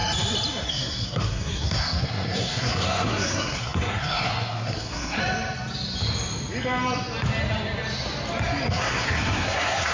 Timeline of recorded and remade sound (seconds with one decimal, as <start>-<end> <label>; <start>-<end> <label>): 0.0-0.7 recorded; 0.7-5.2 remade; 5.2-8.7 recorded; 8.7-9.9 remade